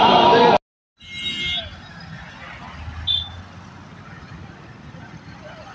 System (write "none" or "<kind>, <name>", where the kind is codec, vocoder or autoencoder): none